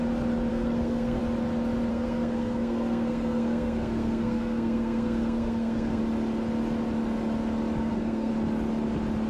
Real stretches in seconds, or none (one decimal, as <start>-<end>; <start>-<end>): 0.0-0.5; 1.2-1.9; 6.0-7.8; 8.3-9.3